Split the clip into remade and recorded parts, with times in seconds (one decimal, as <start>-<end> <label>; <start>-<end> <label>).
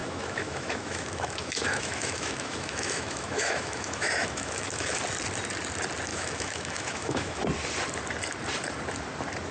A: 0.0-5.0 remade; 5.0-6.1 recorded; 6.1-7.4 remade; 7.4-9.5 recorded